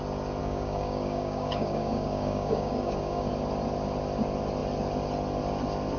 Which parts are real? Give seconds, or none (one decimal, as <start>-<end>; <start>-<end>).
0.0-0.4; 3.3-6.0